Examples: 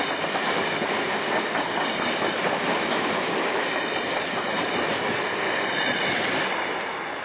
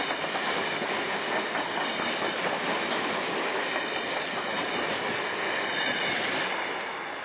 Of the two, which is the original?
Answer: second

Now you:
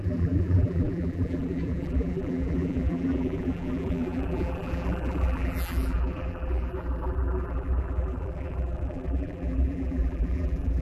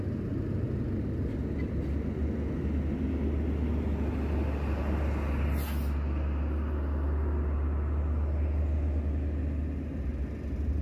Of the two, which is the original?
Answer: second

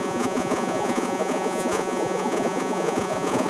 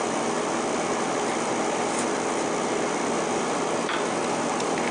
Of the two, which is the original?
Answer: second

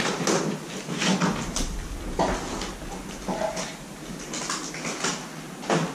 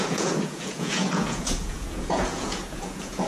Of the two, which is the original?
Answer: first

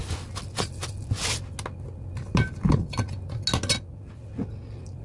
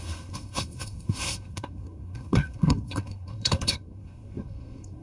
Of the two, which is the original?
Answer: first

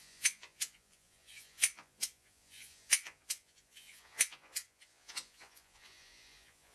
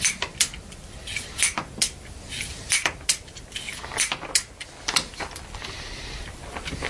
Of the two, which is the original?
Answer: second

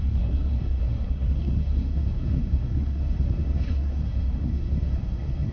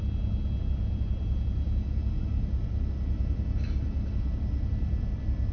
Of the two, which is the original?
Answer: second